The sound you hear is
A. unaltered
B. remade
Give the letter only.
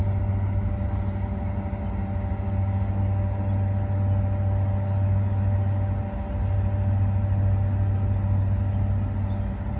A